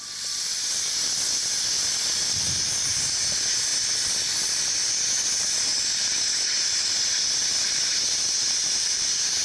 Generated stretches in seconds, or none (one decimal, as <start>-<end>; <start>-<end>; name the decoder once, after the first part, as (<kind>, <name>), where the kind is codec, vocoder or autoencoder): none

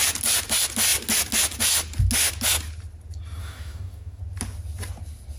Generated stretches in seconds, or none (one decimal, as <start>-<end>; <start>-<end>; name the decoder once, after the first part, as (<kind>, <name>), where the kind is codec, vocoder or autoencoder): 3.4-4.2 (codec, DAC)

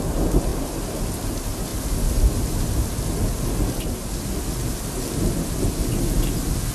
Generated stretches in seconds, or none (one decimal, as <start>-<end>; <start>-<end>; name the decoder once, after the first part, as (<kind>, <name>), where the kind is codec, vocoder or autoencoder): 0.5-1.0 (vocoder, BigVGAN v2)

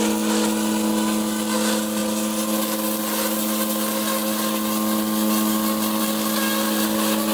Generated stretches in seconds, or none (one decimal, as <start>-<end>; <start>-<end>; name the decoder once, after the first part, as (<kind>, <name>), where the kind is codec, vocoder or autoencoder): none

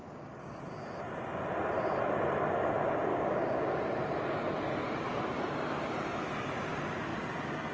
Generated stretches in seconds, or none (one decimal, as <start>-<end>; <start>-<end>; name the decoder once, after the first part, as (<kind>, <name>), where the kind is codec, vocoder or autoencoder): 0.0-0.6 (codec, DAC); 3.1-3.8

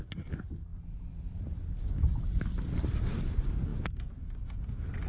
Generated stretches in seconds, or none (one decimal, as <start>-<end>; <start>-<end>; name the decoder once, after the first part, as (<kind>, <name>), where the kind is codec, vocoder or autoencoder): 0.7-3.2 (vocoder, BigVGAN v2); 3.7-4.3

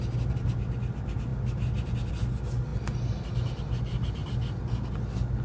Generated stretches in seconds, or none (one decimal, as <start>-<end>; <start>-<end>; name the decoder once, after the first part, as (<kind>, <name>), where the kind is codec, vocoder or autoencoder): none